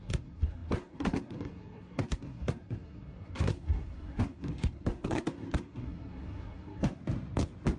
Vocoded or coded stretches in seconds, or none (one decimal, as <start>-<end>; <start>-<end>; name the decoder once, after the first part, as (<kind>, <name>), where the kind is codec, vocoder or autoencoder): 0.0-7.0 (codec, SNAC)